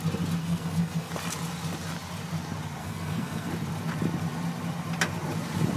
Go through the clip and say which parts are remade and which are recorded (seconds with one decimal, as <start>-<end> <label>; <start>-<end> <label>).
0.0-0.4 recorded; 0.4-1.1 remade; 1.1-2.8 recorded; 2.8-3.5 remade; 3.5-5.8 recorded